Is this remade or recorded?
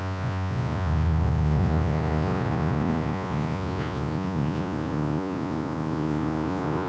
remade